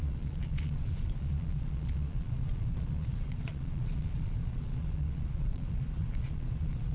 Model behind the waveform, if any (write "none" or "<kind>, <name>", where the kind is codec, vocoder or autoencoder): vocoder, Vocos